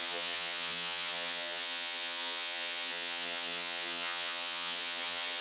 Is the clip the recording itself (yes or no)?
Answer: no